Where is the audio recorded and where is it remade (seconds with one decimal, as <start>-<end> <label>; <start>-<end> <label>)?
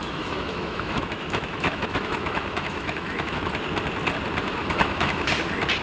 0.0-3.5 remade; 3.5-4.6 recorded; 4.6-5.3 remade; 5.3-5.8 recorded